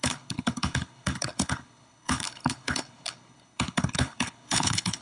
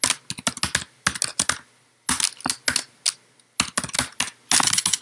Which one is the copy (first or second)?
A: first